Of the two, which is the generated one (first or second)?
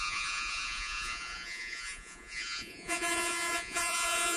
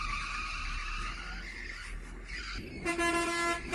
first